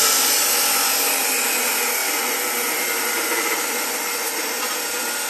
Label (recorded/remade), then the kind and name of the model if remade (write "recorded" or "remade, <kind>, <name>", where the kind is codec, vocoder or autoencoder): recorded